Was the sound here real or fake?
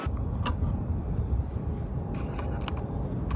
real